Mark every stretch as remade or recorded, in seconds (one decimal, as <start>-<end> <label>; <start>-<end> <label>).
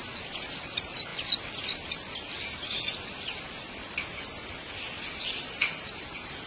0.0-1.1 remade; 1.1-5.0 recorded; 5.0-6.5 remade